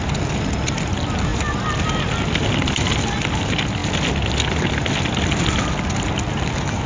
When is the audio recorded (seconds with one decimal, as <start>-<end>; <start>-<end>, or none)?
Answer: 0.0-6.9